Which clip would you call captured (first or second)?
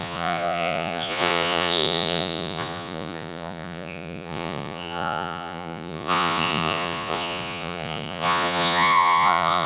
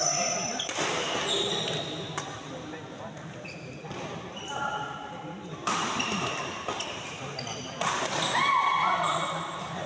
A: second